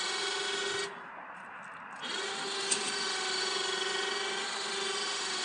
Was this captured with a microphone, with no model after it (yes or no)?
yes